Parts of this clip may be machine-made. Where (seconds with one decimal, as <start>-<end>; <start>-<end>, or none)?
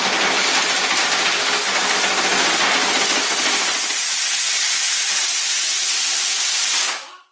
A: none